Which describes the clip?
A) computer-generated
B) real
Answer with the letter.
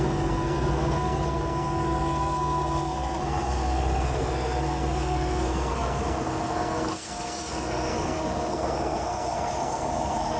A